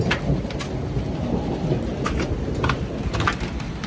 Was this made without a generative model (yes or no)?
yes